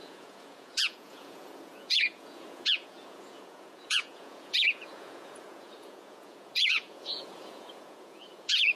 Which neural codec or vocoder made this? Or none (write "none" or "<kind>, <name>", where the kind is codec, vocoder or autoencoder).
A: vocoder, Vocos